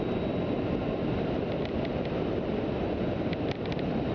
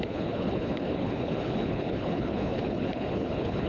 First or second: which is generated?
second